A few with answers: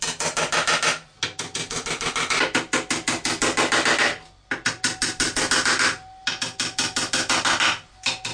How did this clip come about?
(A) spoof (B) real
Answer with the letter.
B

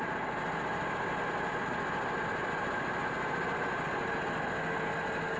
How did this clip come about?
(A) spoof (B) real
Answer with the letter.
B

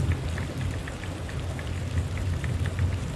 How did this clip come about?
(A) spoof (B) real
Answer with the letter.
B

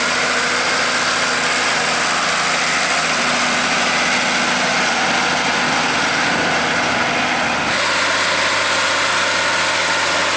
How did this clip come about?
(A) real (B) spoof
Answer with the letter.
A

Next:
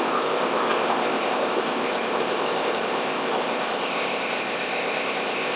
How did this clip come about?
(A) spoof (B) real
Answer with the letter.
A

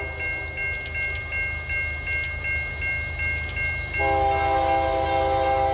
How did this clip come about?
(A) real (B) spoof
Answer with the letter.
A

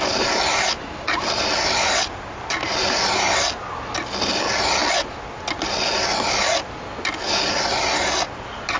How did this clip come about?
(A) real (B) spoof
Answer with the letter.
A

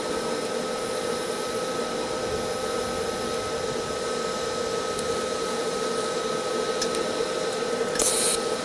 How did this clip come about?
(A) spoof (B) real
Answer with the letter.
B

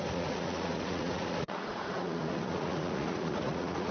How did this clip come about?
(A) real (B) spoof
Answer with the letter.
B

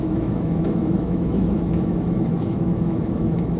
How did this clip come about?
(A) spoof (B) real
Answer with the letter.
A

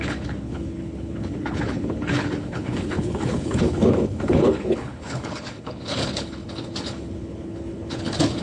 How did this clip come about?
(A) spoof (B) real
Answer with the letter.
A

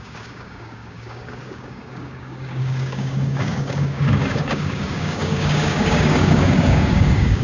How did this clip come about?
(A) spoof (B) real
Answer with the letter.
A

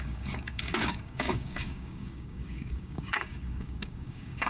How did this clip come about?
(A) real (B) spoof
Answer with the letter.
B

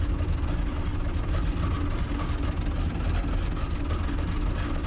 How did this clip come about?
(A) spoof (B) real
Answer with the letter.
B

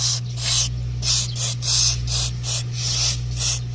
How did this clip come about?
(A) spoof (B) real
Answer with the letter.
B